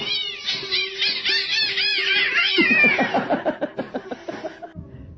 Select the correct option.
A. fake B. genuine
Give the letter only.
B